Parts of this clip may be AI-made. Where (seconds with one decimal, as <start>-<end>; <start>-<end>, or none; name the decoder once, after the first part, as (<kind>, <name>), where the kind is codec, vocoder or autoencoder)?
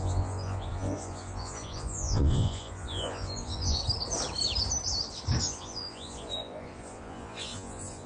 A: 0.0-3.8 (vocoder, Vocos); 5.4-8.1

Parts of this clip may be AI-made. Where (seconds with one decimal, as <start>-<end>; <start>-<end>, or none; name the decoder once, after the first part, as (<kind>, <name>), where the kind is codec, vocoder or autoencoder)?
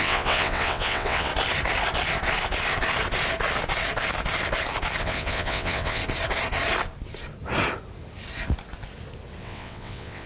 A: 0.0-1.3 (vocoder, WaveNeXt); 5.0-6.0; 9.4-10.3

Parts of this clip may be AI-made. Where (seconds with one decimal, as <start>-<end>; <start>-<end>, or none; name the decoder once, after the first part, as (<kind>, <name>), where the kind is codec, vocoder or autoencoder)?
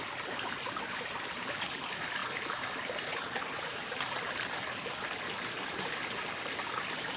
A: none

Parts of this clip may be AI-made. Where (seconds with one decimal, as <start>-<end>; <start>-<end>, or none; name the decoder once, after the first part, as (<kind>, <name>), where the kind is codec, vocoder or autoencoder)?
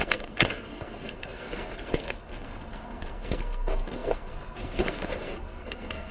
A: 0.0-6.1 (codec, SNAC)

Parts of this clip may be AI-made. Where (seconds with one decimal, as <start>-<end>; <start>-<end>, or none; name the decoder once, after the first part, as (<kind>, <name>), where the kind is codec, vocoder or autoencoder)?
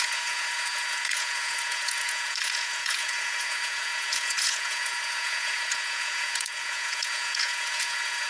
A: 0.0-8.3 (vocoder, Vocos)